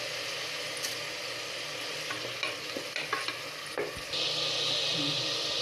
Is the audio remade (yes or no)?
no